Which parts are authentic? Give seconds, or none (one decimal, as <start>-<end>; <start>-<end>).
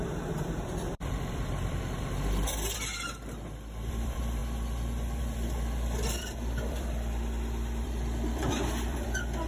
2.9-3.9; 4.4-5.2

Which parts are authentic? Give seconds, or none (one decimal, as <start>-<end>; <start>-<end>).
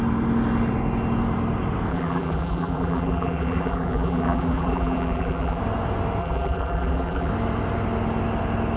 0.0-1.9; 5.6-6.2; 7.3-8.8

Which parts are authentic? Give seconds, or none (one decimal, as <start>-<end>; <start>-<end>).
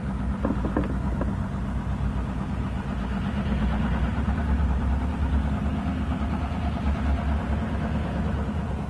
0.0-4.1; 4.9-8.9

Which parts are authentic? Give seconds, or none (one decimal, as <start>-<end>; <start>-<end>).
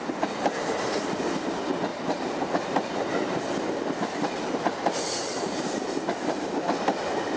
0.0-1.9; 3.1-5.3; 5.8-7.4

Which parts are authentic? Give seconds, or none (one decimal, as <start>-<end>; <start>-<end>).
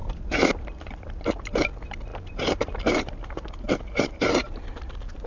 1.1-2.1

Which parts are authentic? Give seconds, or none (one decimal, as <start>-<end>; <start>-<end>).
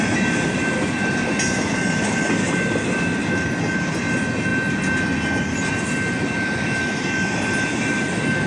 0.0-8.5